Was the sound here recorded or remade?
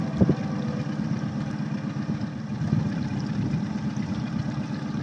recorded